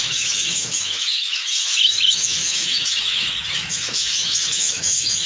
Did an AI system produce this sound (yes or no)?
yes